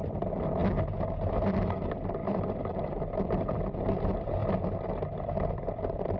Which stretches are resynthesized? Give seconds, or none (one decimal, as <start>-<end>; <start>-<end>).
0.0-0.6; 1.2-4.4; 5.3-6.2